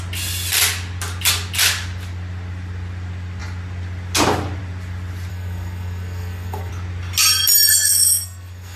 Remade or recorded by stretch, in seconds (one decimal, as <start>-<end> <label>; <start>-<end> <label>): 0.0-5.3 recorded; 5.3-6.7 remade; 6.7-7.7 recorded; 7.7-8.8 remade